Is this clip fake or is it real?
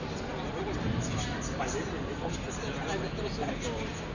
real